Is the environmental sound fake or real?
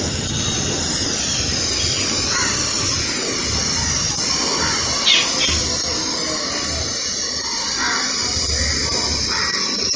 fake